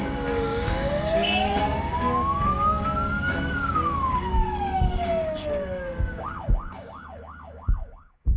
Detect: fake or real fake